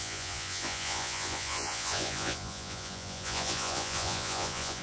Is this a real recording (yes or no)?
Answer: no